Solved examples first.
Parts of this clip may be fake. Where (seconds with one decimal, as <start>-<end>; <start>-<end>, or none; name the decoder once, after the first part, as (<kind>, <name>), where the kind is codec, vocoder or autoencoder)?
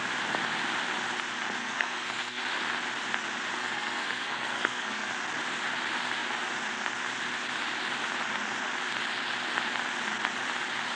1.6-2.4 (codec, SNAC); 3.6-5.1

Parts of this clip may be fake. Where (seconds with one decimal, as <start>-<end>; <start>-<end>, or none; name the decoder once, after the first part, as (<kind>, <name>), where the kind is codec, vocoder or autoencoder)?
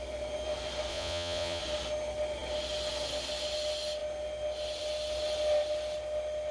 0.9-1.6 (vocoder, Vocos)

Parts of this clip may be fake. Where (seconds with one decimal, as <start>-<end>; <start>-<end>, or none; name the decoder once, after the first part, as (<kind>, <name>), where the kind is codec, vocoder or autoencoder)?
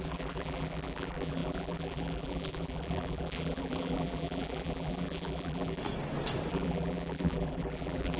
0.0-5.8 (vocoder, BigVGAN v2); 6.5-8.2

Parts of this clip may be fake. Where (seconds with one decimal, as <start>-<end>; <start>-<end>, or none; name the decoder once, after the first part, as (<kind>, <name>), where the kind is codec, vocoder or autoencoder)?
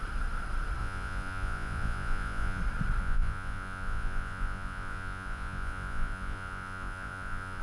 0.8-2.6 (vocoder, Vocos); 3.0-7.6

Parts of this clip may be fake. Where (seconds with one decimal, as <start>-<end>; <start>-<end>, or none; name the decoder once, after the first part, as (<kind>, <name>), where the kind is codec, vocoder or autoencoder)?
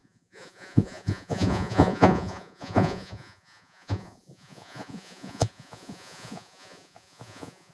0.0-7.7 (vocoder, Vocos)